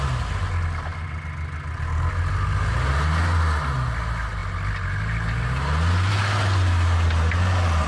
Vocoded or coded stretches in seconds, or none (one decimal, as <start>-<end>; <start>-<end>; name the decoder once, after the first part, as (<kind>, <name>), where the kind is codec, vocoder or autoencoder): none